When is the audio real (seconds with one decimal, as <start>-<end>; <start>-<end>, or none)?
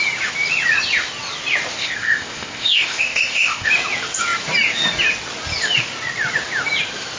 0.0-1.8; 3.7-7.2